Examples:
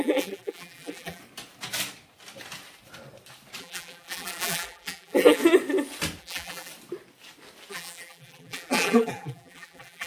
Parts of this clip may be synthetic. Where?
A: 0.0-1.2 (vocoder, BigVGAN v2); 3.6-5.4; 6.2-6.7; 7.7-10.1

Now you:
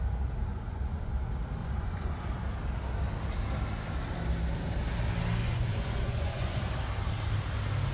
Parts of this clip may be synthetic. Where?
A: 0.5-1.1 (vocoder, Vocos); 1.6-2.3; 5.4-6.6

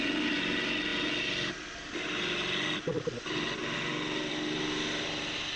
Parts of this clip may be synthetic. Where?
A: none

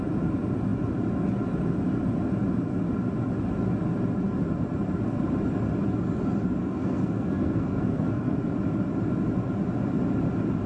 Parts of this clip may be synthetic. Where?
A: 6.6-8.4 (codec, SNAC)

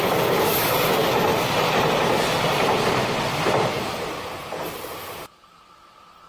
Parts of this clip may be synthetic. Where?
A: none